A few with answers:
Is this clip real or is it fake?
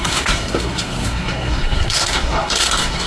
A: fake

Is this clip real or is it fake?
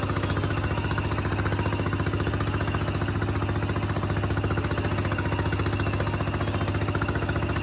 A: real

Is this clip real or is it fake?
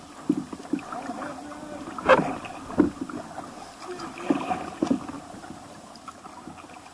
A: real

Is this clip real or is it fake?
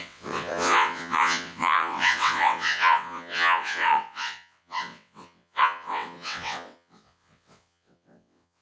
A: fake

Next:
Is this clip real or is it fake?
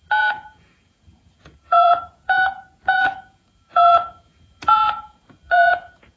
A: fake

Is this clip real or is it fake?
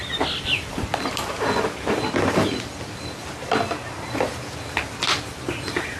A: real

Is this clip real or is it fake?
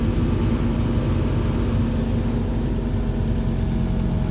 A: real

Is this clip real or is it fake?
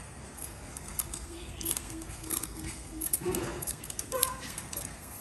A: fake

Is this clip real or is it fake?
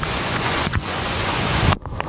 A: fake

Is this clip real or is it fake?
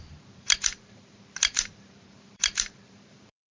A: fake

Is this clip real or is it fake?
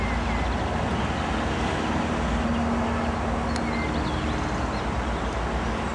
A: real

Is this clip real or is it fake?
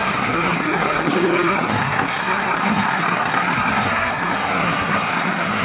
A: fake